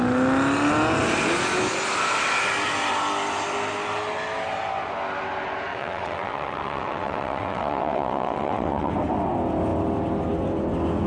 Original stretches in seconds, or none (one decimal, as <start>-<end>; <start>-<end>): 0.0-5.7; 8.9-11.1